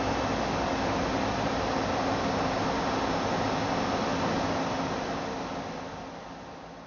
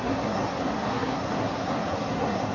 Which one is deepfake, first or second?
second